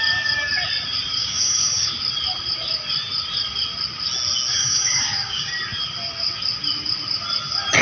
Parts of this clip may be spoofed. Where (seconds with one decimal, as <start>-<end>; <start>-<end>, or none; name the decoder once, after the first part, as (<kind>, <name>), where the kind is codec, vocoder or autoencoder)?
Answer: 1.2-1.9 (codec, DAC); 4.5-5.5